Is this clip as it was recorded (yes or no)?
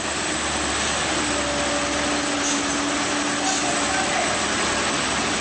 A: yes